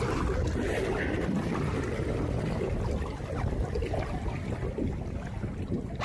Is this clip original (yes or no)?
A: yes